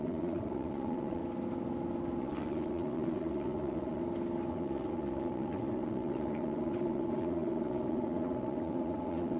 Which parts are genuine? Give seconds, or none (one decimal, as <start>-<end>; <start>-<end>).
1.2-2.2; 4.0-4.5